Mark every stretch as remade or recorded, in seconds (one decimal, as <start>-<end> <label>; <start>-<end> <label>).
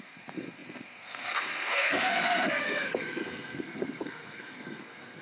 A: 0.0-5.2 remade